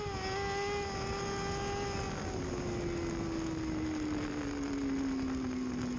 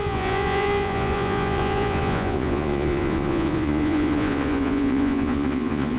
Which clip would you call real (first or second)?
first